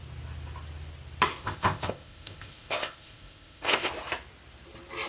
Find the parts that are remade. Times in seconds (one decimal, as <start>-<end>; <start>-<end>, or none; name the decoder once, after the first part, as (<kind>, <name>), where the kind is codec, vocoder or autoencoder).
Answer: 1.3-3.9 (codec, ZipCodec)